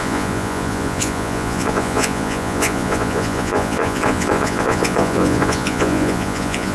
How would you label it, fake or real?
fake